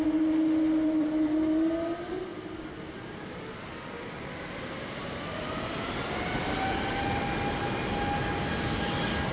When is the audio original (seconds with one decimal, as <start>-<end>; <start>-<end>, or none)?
0.0-9.3